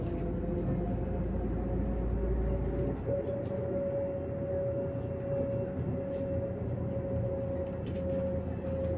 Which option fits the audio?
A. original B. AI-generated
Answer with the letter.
A